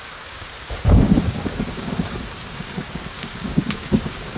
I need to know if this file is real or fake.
fake